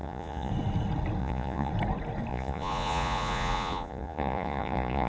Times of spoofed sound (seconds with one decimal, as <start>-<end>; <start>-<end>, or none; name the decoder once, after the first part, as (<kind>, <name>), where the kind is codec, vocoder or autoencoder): 0.0-0.5 (vocoder, Vocos); 1.2-1.7; 2.3-5.1